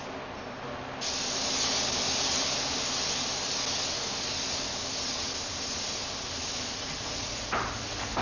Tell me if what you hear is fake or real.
real